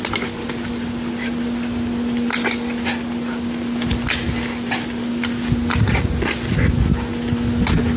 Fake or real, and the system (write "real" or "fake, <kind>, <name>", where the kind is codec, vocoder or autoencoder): real